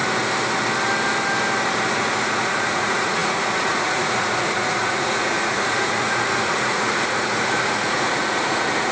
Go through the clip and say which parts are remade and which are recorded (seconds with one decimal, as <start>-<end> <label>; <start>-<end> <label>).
0.0-1.9 recorded; 1.9-8.9 remade